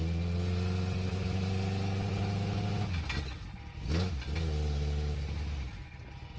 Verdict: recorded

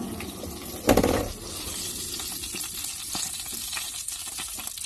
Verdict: recorded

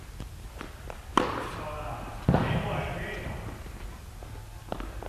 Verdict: recorded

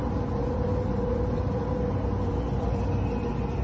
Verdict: recorded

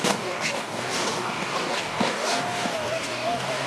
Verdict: remade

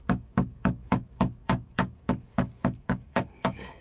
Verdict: remade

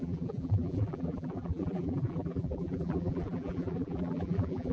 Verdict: remade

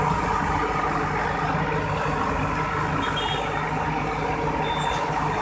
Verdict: recorded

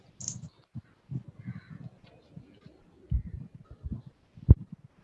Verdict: recorded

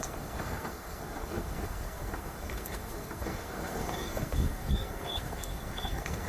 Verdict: remade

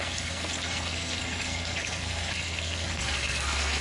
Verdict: remade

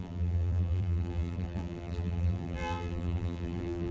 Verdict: remade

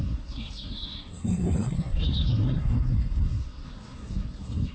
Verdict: remade